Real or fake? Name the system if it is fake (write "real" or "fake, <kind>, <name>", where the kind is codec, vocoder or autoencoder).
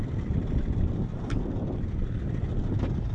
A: real